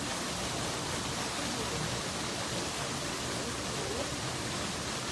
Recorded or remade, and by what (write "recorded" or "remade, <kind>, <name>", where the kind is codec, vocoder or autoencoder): recorded